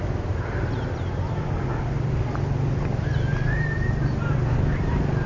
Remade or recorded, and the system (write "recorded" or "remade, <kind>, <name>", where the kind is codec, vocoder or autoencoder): recorded